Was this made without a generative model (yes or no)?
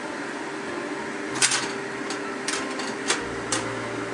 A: yes